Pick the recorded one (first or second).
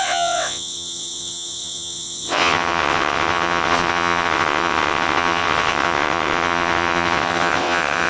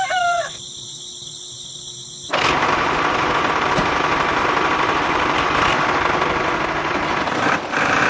second